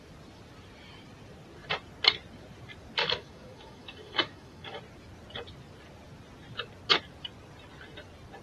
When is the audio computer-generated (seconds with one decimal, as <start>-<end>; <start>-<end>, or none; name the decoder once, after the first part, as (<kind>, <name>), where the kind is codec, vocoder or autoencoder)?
3.0-4.8 (autoencoder, DAC-VAE)